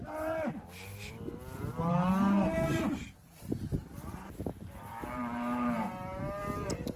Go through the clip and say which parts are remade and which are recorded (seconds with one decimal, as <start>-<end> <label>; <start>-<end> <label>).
0.0-2.7 recorded; 2.7-6.2 remade; 6.2-7.0 recorded